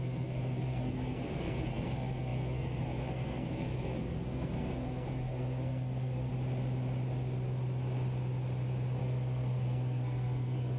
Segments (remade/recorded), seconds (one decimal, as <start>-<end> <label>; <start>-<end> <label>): 0.0-6.3 remade; 6.3-9.0 recorded; 9.0-10.8 remade